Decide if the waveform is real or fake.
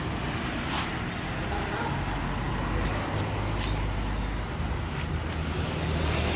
real